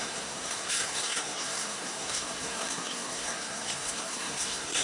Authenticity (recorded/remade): remade